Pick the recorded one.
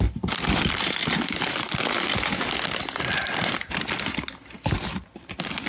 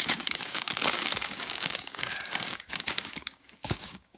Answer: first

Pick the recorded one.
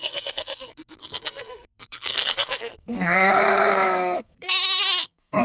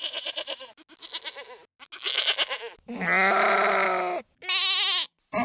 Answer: second